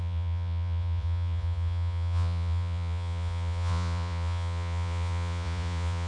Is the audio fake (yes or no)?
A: yes